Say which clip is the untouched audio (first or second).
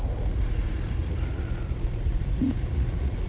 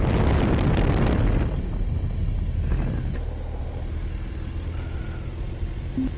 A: second